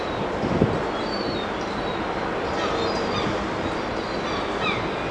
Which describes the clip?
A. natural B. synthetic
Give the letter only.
A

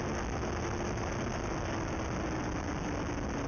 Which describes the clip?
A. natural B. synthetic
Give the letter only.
A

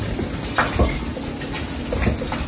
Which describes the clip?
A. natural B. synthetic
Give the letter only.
A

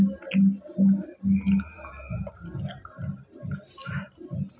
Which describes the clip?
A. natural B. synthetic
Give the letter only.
A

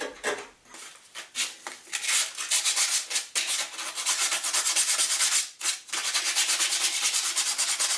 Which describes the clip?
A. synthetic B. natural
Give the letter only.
B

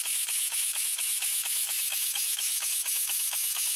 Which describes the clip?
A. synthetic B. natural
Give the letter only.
A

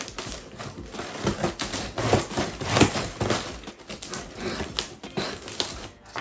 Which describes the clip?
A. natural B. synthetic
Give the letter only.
A